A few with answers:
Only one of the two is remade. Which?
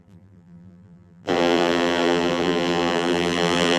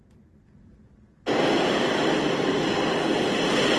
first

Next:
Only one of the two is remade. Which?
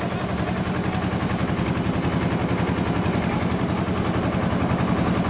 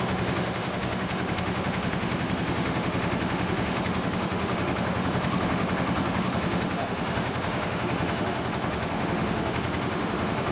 second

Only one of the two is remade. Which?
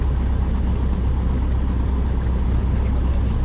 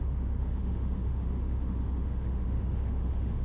second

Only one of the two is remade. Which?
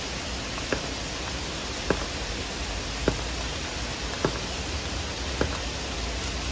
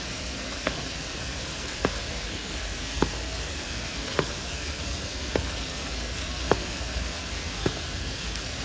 second